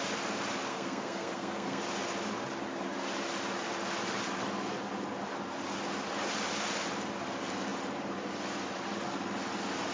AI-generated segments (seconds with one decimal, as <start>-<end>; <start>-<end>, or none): 0.7-1.8